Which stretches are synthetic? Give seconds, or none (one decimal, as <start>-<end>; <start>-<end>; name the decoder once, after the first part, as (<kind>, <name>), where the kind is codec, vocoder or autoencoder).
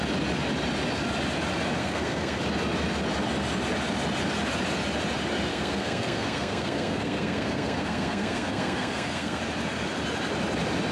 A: 1.8-2.4 (codec, SNAC); 5.5-9.4